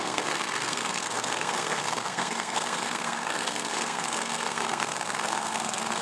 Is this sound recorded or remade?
remade